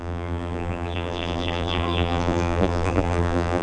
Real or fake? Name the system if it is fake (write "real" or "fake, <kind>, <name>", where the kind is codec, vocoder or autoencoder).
fake, vocoder, BigVGAN v2